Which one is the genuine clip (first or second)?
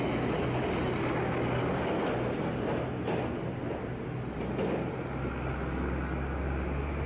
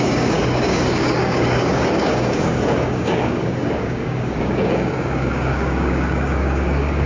first